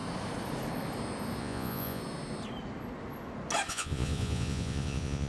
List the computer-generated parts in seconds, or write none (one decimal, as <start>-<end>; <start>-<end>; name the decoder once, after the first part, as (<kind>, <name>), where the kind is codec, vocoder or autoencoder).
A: 1.4-2.0 (vocoder, Vocos); 3.7-5.3

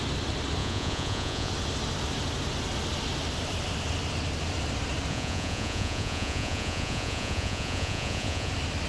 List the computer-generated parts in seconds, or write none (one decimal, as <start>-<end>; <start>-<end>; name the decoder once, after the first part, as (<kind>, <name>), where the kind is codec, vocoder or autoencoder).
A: 0.6-1.5 (vocoder, Vocos); 5.1-8.5

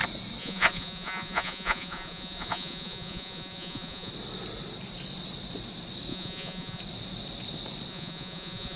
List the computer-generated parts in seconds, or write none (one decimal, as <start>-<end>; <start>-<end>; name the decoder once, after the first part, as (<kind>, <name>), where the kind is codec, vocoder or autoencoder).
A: 0.4-4.1 (vocoder, Vocos); 6.1-6.8; 7.9-8.8

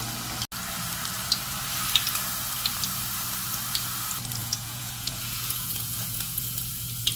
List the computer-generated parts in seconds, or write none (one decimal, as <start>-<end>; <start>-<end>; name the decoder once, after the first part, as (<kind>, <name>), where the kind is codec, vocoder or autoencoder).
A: 4.4-6.7 (vocoder, Vocos)

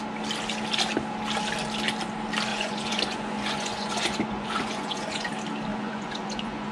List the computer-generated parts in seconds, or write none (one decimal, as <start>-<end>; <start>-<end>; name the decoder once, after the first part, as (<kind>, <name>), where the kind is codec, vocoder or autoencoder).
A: 2.5-5.3 (vocoder, Vocos); 5.7-6.7